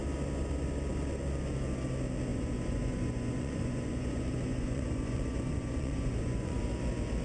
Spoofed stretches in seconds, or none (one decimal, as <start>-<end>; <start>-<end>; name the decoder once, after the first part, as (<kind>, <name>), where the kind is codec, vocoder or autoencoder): 2.3-6.6 (vocoder, Vocos)

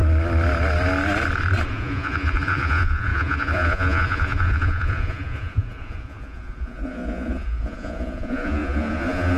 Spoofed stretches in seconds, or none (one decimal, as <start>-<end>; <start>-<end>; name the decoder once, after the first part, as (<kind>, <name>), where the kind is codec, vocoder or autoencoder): 1.7-9.4 (vocoder, Vocos)

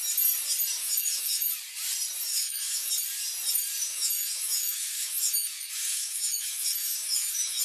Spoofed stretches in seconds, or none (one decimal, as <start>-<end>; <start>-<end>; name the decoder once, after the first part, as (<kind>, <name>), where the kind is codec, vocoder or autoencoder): 0.8-1.5 (autoencoder, DAC-VAE); 2.3-2.9; 3.8-7.6

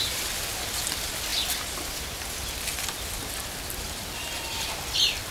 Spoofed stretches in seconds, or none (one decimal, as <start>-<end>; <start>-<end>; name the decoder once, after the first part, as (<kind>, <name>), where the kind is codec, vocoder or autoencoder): none